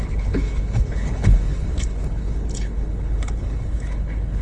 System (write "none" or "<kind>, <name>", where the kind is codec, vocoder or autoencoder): codec, HILCodec